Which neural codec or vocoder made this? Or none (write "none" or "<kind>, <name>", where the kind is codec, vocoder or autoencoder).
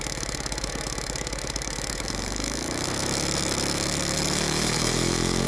autoencoder, DAC-VAE